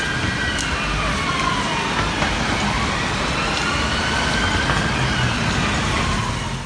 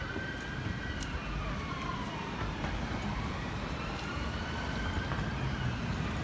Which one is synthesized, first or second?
second